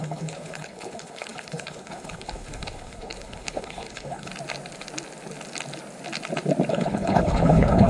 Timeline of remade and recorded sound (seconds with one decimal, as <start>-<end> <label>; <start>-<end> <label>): 0.0-4.3 remade; 4.3-6.7 recorded; 6.7-7.9 remade